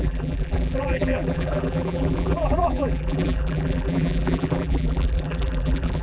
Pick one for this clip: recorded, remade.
remade